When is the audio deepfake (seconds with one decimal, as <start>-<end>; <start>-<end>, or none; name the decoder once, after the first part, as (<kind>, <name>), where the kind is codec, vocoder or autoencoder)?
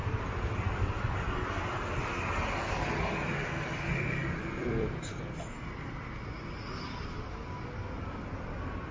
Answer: 4.2-5.0 (vocoder, BigVGAN v2)